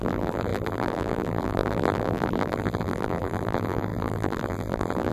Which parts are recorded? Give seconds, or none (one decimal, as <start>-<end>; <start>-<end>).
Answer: none